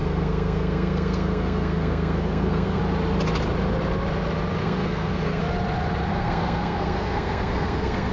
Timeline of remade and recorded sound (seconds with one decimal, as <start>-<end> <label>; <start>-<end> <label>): 0.0-2.8 remade; 2.8-4.6 recorded; 4.6-5.4 remade; 5.4-6.1 recorded; 6.1-8.1 remade